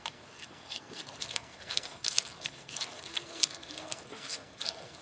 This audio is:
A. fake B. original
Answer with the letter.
A